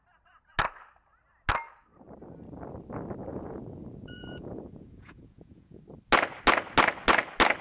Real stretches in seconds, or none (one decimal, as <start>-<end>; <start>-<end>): 0.0-3.3; 5.8-7.6